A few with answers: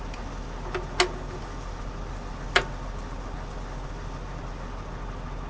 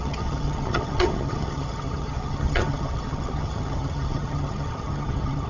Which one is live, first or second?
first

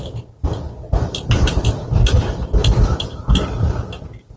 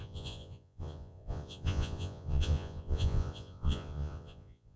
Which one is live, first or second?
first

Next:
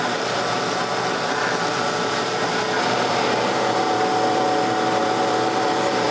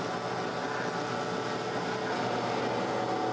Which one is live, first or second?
second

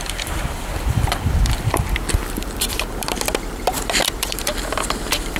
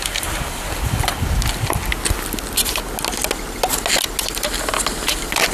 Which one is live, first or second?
second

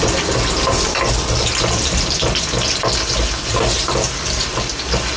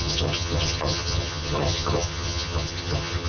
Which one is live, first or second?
first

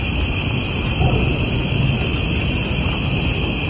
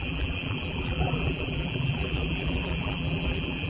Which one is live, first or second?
first